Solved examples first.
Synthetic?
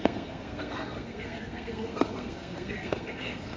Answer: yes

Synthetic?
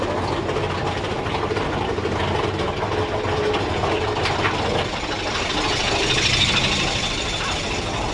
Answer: no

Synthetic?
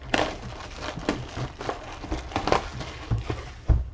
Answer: no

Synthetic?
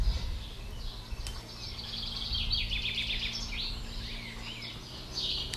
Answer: no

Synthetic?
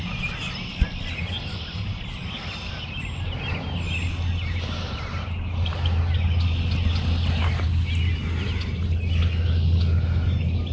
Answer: no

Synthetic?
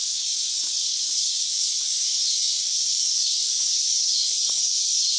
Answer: yes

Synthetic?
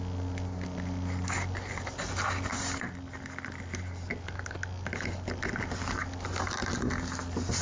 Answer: no